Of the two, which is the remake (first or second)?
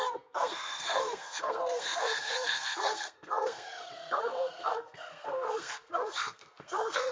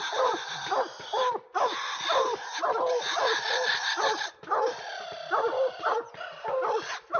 first